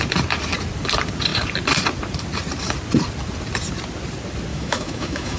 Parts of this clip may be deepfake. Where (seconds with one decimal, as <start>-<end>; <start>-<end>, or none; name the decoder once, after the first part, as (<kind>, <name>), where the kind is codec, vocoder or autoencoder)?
4.5-5.4 (autoencoder, DAC-VAE)